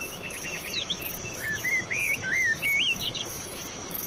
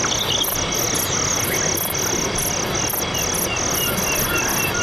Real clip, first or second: second